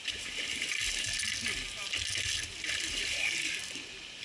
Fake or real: real